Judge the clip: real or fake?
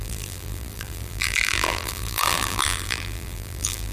fake